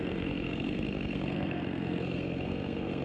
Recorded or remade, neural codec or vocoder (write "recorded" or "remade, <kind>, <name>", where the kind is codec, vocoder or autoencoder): remade, codec, SNAC